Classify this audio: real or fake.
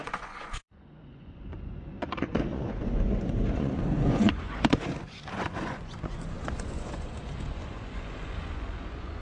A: fake